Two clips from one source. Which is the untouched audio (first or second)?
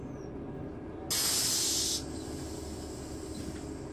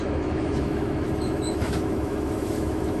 first